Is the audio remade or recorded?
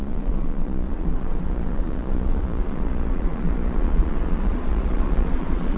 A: remade